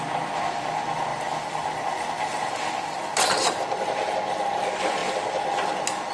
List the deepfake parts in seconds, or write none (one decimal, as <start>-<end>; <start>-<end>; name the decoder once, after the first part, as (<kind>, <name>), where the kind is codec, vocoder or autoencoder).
1.1-3.0 (vocoder, BigVGAN v2)